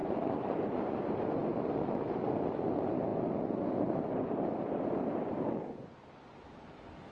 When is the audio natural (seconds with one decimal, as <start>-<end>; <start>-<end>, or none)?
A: 1.1-7.1